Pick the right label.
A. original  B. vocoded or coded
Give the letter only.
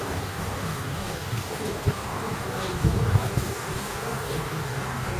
B